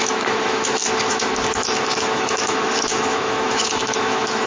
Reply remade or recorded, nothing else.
remade